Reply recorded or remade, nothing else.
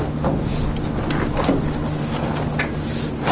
recorded